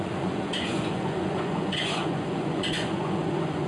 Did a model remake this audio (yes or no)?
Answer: yes